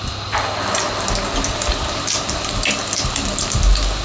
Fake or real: real